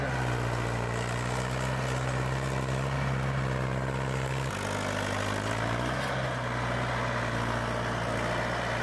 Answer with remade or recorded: recorded